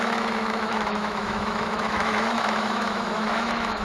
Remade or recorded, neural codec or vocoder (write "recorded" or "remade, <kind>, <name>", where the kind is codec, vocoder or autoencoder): remade, autoencoder, DAC-VAE